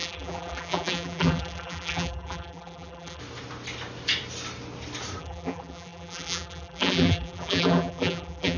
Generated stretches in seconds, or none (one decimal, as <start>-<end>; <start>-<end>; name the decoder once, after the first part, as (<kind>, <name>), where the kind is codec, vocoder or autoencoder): 0.0-3.2 (vocoder, BigVGAN v2); 5.2-8.6